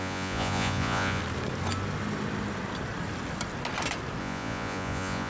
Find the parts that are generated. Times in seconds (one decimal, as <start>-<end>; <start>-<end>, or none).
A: 0.0-1.2; 4.2-5.3